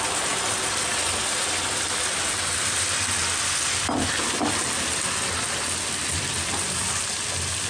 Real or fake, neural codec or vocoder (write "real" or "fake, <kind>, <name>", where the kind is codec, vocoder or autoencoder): real